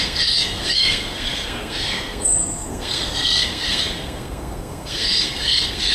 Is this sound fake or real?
fake